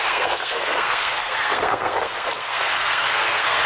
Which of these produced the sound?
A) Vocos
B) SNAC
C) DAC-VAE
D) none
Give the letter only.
B